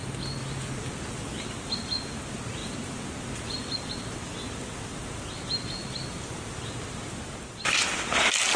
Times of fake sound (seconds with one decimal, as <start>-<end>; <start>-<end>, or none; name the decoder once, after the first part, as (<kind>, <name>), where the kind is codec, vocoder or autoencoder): none